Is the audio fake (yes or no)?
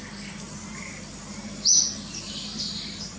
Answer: no